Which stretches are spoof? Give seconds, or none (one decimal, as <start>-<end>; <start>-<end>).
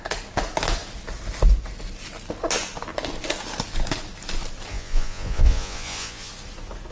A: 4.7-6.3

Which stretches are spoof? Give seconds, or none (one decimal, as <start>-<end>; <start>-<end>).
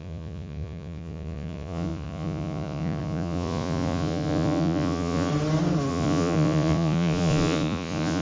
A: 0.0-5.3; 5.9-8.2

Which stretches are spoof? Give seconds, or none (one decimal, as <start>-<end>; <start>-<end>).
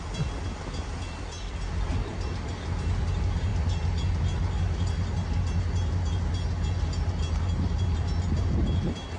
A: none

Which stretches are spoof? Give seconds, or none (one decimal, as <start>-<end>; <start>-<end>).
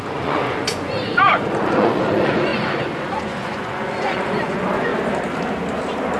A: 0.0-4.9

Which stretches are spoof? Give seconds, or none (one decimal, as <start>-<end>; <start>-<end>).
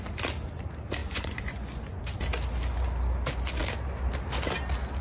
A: 1.0-2.0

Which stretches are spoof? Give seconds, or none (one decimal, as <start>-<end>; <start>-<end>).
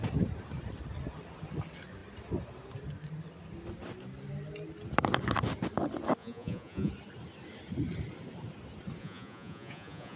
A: 6.2-6.9; 9.0-10.2